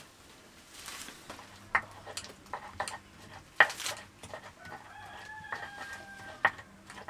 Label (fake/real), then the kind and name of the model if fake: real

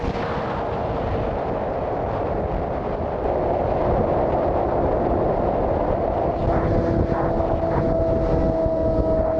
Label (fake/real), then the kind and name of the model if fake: real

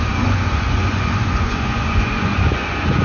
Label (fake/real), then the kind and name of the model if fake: fake, vocoder, Vocos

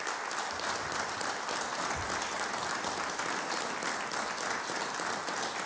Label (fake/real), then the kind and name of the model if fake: real